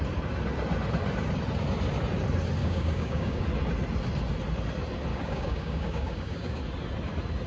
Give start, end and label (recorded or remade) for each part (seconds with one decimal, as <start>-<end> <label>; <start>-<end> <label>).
0.0-2.6 recorded; 2.6-3.4 remade; 3.4-5.1 recorded; 5.1-6.6 remade; 6.6-7.5 recorded